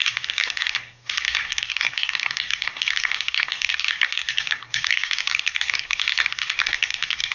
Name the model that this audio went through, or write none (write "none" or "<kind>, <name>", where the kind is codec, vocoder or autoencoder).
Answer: codec, SNAC